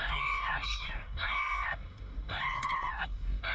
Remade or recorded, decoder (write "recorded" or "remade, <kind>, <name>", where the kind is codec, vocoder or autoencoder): remade, codec, SNAC